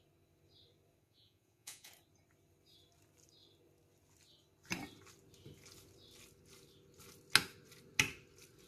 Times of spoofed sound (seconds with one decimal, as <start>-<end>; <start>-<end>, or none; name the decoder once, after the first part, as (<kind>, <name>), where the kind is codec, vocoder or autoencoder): 1.0-1.9 (vocoder, Vocos)